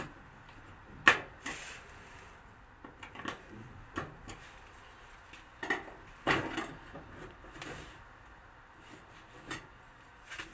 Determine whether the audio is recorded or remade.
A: recorded